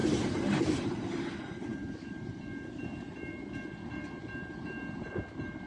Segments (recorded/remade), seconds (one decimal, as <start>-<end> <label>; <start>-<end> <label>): 0.0-1.7 recorded; 1.7-5.1 remade; 5.1-5.7 recorded